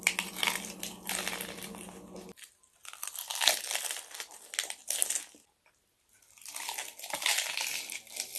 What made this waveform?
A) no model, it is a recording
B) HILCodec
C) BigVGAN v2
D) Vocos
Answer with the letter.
A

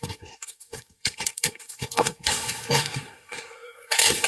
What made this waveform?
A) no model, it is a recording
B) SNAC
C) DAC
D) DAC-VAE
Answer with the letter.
B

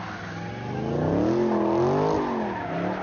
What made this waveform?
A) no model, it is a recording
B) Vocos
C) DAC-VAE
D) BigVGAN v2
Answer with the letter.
A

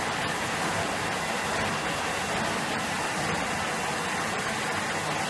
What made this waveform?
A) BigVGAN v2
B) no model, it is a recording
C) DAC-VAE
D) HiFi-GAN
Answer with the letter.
B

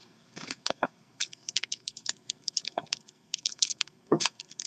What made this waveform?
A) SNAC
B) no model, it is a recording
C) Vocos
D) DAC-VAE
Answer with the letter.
A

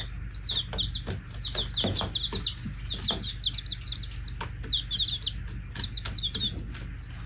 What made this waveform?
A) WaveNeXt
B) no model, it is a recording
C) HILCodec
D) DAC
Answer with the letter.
B